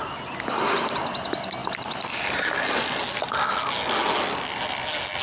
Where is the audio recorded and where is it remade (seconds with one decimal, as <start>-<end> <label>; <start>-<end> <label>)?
0.0-1.6 recorded; 1.6-2.6 remade; 2.6-5.2 recorded